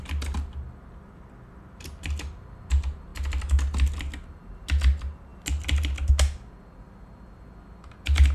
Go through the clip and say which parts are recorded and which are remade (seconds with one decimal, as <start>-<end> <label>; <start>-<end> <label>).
0.0-8.3 recorded